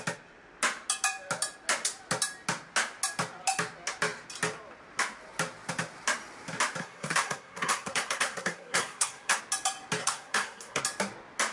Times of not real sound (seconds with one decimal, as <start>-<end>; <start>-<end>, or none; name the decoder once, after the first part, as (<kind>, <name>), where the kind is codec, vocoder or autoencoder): 6.8-9.4 (codec, SNAC); 10.0-10.8